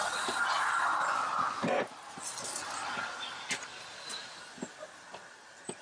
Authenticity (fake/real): real